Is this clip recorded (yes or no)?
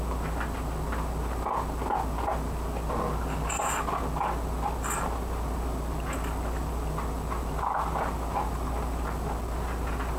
yes